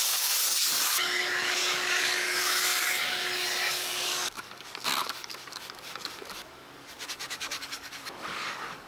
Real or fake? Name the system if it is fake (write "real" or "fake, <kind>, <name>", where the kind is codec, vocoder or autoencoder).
fake, codec, DAC